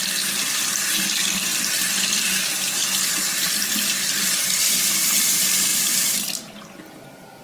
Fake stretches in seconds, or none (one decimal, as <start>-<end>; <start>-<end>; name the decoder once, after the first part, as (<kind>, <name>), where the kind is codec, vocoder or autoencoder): none